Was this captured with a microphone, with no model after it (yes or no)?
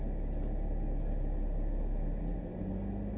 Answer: yes